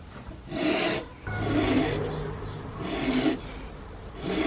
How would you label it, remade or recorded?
recorded